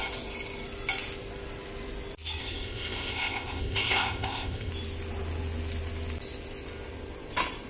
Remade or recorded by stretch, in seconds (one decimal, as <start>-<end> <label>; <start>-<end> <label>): 0.0-2.4 recorded; 2.4-4.7 remade; 4.7-7.7 recorded